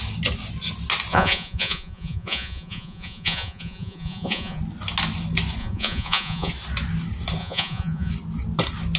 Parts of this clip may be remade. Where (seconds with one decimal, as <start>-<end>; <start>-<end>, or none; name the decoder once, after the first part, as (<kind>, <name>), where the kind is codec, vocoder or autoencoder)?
1.1-4.6 (vocoder, Vocos); 5.6-6.5; 7.4-8.1